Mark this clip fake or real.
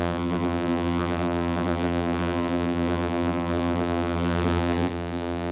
fake